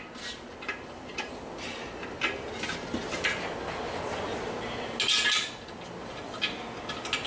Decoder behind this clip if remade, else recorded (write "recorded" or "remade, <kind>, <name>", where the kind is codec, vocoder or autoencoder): recorded